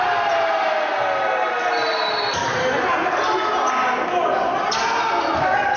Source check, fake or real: real